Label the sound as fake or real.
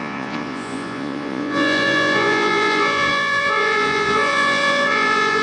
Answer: fake